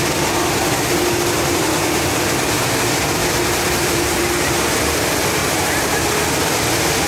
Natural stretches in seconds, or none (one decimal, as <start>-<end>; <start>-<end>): 0.0-3.2; 4.2-5.4; 5.9-7.1